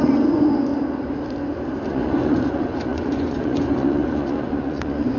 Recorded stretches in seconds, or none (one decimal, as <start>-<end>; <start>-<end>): 0.7-1.9